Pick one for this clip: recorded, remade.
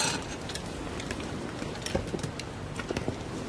recorded